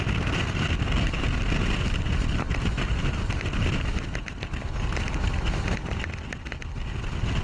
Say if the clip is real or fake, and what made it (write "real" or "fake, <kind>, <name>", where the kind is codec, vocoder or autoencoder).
real